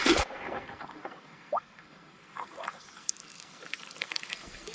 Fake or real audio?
fake